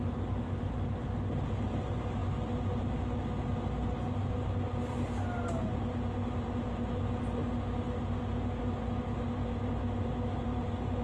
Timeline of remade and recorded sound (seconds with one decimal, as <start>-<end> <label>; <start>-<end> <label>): 0.0-11.0 recorded